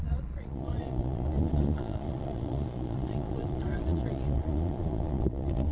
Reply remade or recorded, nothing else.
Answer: remade